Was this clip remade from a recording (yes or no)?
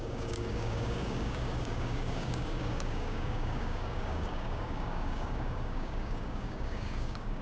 yes